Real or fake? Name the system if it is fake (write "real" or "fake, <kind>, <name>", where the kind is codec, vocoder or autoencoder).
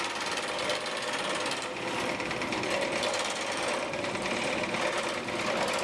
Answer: real